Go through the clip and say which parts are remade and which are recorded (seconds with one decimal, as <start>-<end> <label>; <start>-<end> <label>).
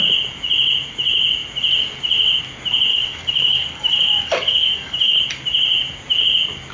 0.0-2.9 recorded; 2.9-5.2 remade; 5.2-6.7 recorded